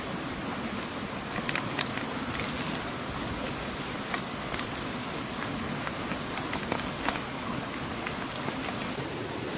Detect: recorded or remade recorded